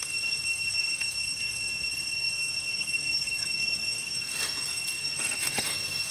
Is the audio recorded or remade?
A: remade